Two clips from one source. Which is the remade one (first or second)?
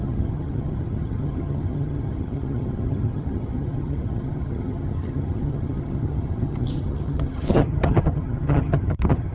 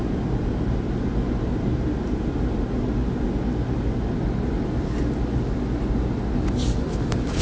first